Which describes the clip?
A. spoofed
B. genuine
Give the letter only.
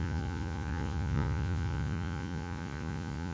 A